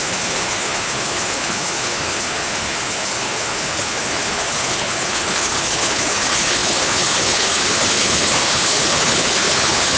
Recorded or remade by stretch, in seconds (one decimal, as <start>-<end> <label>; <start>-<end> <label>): 0.0-10.0 remade